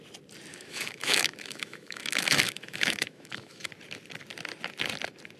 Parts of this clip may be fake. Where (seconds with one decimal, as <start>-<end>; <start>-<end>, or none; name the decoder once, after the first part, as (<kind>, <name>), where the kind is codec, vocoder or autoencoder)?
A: 0.5-3.7 (autoencoder, DAC-VAE)